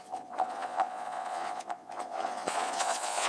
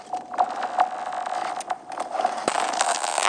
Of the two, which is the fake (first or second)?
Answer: first